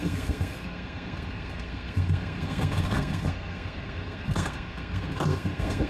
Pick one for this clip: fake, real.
fake